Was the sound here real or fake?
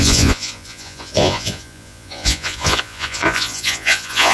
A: fake